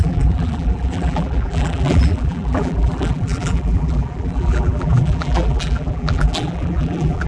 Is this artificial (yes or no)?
yes